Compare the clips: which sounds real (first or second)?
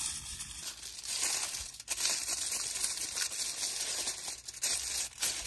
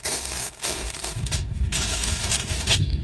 first